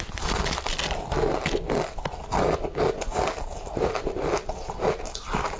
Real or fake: real